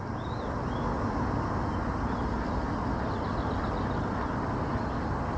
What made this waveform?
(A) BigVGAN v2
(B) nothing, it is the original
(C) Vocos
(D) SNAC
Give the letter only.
B